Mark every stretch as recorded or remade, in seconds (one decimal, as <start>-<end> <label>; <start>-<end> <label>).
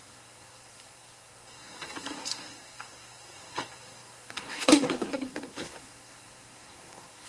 0.0-7.3 remade